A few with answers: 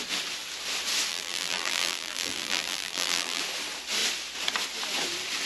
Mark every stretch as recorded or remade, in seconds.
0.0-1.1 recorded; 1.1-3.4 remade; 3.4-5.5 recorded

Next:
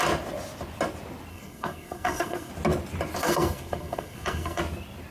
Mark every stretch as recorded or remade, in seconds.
0.0-1.3 recorded; 1.3-2.5 remade; 2.5-3.2 recorded; 3.2-4.6 remade; 4.6-5.1 recorded

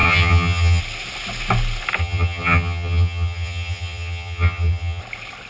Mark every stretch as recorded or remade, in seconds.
0.0-0.8 remade; 0.8-2.0 recorded; 2.0-5.0 remade; 5.0-5.5 recorded

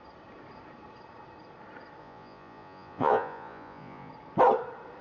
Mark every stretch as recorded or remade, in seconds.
0.0-2.0 recorded; 2.0-4.1 remade; 4.1-5.0 recorded

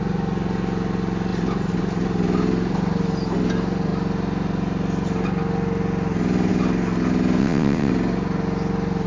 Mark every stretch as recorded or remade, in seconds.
0.0-7.4 recorded; 7.4-7.9 remade; 7.9-9.1 recorded

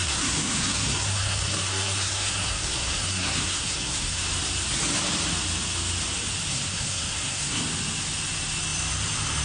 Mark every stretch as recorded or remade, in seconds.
0.0-4.2 remade; 4.2-6.5 recorded; 6.5-7.6 remade; 7.6-9.4 recorded